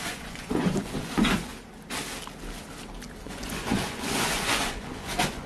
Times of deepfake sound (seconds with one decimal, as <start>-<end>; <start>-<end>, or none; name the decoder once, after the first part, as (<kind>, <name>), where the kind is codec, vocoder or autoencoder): 0.0-1.5 (vocoder, Vocos); 3.2-5.5